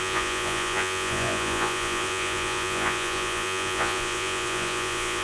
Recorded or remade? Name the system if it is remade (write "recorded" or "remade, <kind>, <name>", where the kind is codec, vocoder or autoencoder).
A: remade, vocoder, Vocos